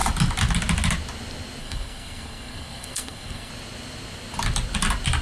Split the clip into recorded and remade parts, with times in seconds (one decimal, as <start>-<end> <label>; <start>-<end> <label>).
0.0-1.6 recorded; 1.6-3.5 remade; 3.5-5.2 recorded